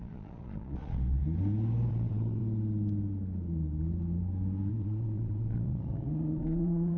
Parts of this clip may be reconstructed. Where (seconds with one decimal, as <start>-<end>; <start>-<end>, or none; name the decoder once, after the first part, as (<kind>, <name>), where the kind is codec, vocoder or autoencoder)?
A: 0.0-1.2 (vocoder, Vocos); 1.9-2.4; 4.7-7.0